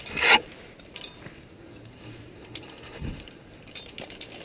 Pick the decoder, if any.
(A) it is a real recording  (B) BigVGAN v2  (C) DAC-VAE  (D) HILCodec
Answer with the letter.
A